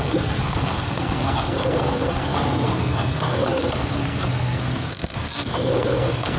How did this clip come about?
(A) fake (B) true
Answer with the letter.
A